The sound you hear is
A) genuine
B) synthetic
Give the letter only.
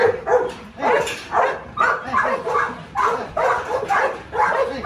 A